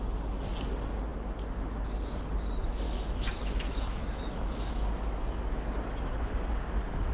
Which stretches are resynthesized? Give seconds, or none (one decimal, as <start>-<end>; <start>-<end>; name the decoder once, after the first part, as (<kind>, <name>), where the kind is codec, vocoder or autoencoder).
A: 2.6-6.5 (autoencoder, DAC-VAE)